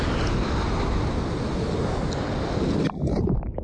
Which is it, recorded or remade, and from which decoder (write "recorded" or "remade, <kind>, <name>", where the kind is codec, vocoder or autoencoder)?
recorded